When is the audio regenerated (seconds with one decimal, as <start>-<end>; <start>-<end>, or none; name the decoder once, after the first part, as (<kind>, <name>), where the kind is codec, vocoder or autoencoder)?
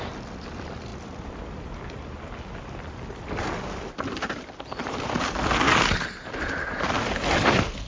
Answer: none